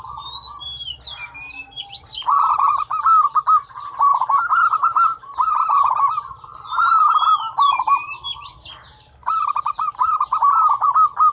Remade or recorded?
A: recorded